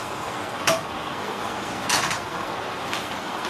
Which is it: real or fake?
fake